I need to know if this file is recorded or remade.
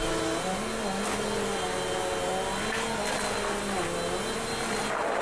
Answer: recorded